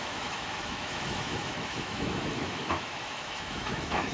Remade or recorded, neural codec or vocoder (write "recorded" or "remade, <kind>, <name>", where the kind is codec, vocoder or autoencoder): remade, autoencoder, DAC-VAE